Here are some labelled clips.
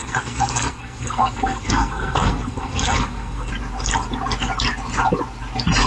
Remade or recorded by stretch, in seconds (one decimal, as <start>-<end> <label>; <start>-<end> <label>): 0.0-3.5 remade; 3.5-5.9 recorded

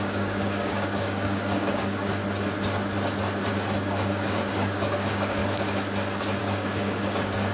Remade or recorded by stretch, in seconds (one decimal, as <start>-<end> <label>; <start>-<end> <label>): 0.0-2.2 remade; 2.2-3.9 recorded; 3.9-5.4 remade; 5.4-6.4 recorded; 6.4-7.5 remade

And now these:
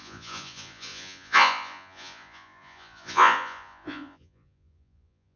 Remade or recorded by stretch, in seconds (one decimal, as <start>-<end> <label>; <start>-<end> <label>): 0.0-5.4 remade

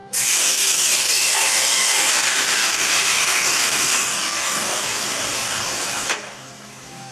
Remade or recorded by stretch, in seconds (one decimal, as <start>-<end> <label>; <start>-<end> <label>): 0.0-7.1 remade

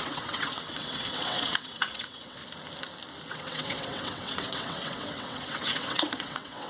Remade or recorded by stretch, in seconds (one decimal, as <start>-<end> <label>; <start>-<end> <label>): 0.0-2.4 remade; 2.4-3.3 recorded; 3.3-6.7 remade

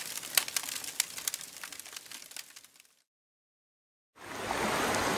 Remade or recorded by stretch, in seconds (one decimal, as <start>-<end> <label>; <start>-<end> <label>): 0.0-5.2 recorded

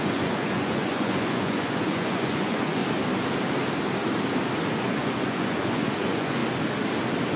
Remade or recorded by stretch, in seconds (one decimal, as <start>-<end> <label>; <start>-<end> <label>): 0.0-2.8 remade; 2.8-4.8 recorded; 4.8-6.4 remade; 6.4-7.4 recorded

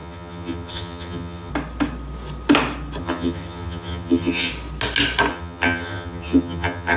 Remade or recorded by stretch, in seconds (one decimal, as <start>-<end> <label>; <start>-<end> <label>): 0.0-1.5 remade; 1.5-3.0 recorded; 3.0-4.5 remade; 4.5-5.3 recorded; 5.3-7.0 remade